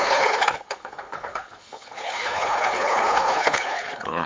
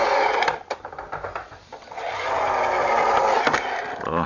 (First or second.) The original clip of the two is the second